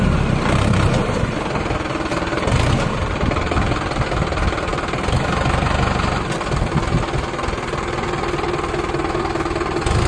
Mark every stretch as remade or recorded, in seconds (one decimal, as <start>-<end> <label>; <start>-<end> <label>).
0.0-10.1 recorded